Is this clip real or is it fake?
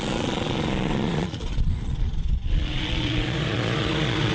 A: fake